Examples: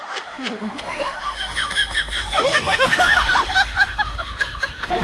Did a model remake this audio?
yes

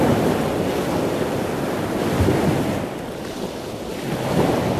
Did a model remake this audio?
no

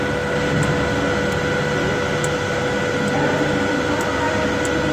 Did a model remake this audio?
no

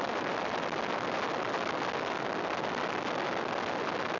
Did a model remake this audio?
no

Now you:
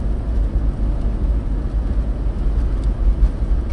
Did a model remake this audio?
no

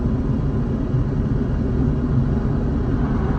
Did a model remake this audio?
no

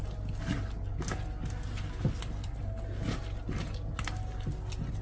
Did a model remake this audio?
no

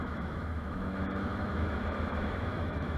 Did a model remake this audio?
yes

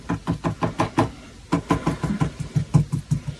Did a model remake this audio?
no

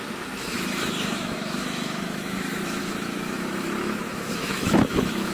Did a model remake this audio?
yes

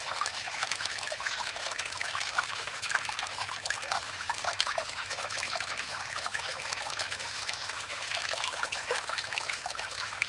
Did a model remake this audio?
yes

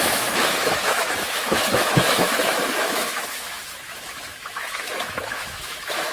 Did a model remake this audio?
yes